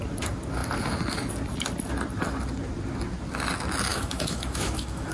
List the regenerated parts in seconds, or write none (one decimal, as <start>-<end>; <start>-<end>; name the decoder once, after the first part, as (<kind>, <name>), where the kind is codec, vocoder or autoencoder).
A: 3.9-5.1 (autoencoder, DAC-VAE)